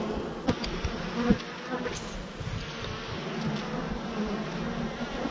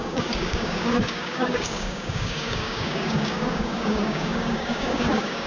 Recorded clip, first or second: first